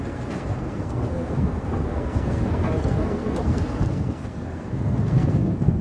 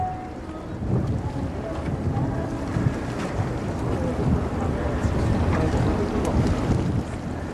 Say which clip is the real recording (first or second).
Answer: second